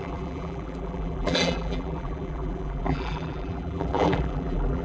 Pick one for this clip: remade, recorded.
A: remade